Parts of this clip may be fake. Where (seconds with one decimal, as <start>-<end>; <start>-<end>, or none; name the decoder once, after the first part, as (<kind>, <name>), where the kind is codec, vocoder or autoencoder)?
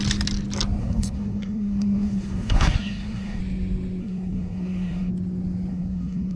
0.8-3.4 (codec, SNAC); 4.0-5.1; 5.7-6.4